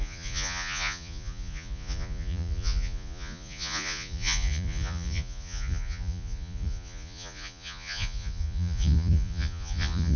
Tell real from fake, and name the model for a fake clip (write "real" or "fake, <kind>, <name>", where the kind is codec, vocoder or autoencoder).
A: fake, vocoder, Vocos